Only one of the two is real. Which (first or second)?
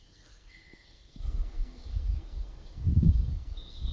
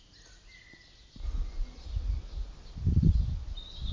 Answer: second